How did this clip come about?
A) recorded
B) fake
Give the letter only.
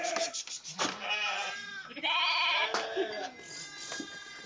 A